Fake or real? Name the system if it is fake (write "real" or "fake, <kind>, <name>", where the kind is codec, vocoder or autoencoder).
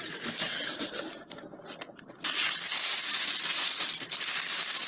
real